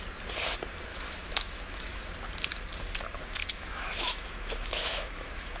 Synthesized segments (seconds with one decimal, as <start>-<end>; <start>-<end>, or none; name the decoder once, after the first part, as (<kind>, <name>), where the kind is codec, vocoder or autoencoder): 0.9-2.0 (autoencoder, DAC-VAE); 3.4-5.6